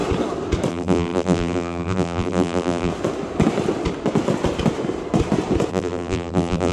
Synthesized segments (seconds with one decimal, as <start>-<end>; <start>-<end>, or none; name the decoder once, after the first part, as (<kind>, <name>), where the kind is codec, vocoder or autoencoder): 0.7-2.9 (vocoder, BigVGAN v2); 5.7-6.7